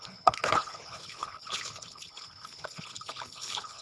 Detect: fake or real fake